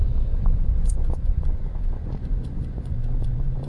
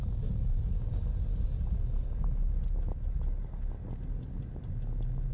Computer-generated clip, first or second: first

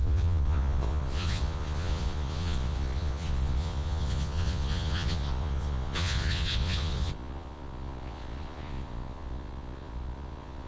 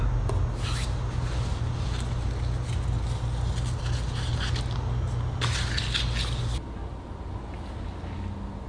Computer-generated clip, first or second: first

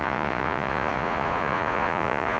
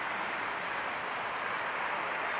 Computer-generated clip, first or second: first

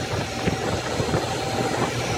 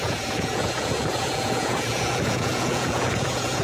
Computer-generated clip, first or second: second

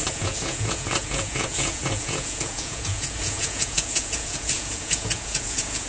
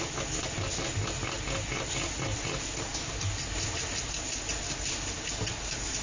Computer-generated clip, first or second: first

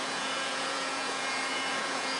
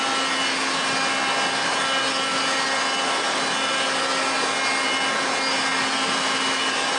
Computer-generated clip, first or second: first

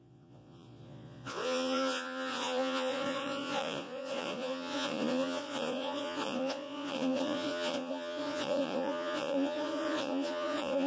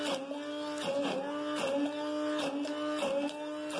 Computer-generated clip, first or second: first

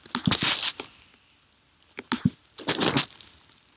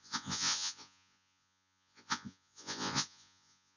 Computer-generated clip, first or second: second